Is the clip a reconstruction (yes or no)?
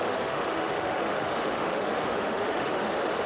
yes